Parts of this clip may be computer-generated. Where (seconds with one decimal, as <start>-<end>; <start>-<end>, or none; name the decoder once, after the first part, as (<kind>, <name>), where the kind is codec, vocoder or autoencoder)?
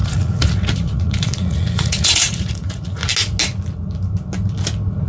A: 0.0-3.1 (vocoder, Vocos)